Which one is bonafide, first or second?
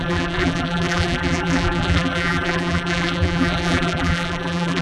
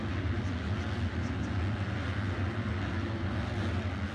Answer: second